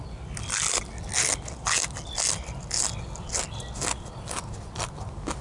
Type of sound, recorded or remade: recorded